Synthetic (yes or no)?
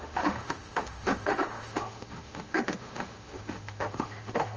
yes